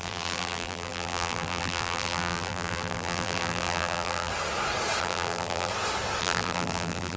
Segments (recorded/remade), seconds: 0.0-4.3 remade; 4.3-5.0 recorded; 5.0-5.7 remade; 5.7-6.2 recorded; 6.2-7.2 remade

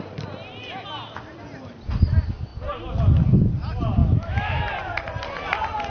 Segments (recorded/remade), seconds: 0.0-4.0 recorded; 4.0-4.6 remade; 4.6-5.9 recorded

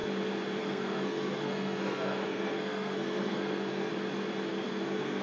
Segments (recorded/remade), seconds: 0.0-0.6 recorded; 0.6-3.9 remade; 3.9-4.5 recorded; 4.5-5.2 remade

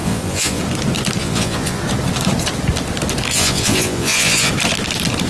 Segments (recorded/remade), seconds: 0.0-0.6 remade; 0.6-1.2 recorded; 1.2-1.8 remade; 1.8-3.3 recorded; 3.3-4.5 remade; 4.5-5.3 recorded

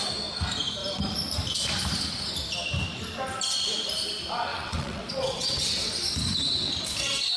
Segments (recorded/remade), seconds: 0.0-4.5 recorded; 4.5-5.9 remade; 5.9-7.4 recorded